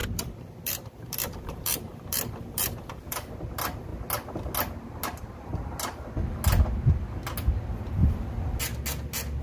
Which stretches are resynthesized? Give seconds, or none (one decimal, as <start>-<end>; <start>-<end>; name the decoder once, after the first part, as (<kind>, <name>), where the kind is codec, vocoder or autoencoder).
0.0-3.4 (vocoder, BigVGAN v2); 8.0-8.6